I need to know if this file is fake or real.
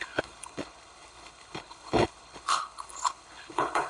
fake